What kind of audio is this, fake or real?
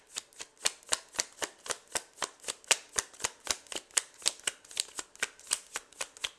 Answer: real